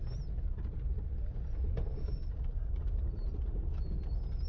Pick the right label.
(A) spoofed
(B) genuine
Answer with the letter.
B